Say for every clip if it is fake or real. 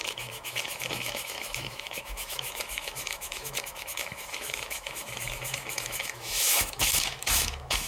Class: fake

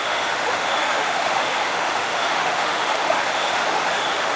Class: fake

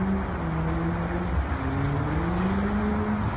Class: real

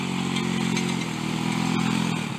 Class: real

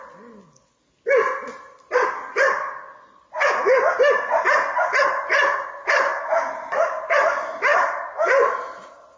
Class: real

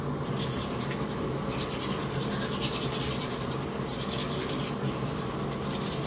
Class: real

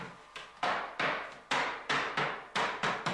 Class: real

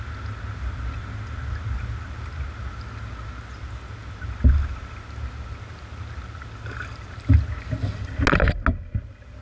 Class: real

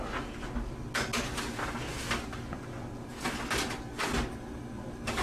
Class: real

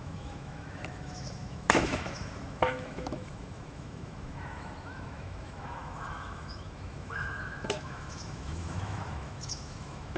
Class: fake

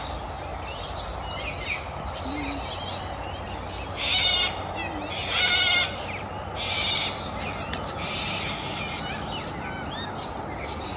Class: real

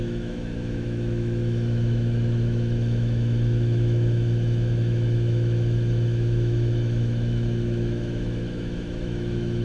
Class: fake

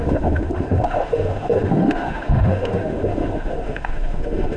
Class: fake